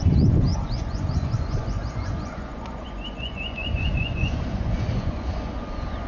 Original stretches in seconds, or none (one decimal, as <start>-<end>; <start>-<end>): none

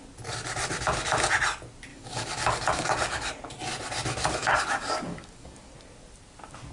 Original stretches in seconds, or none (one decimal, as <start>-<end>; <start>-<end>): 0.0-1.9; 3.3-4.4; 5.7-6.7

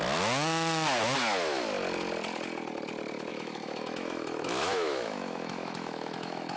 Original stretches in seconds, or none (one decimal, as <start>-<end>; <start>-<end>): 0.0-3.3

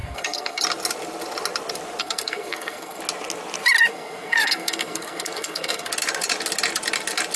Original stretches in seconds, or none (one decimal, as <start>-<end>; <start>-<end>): 0.6-2.0; 3.0-3.9; 5.9-7.4

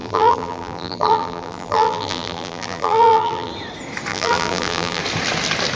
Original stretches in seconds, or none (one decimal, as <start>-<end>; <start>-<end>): 3.5-4.1; 5.0-5.8

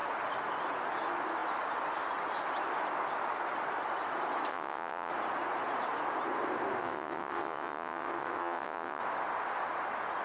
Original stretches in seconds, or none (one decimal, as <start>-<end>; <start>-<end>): 0.0-4.5; 5.1-6.8; 9.0-10.2